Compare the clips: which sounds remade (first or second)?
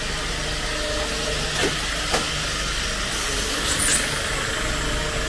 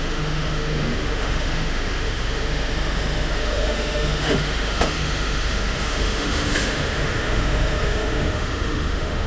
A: second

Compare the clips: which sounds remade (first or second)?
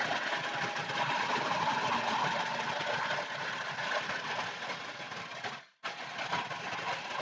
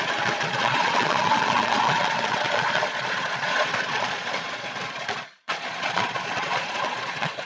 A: second